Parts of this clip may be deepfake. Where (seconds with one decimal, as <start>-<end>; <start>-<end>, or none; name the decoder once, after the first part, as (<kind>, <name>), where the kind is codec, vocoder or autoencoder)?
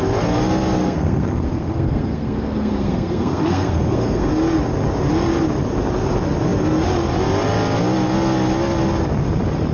0.8-4.3 (codec, SNAC)